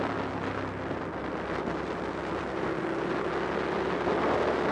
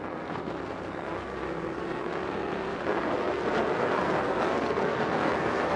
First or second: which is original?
first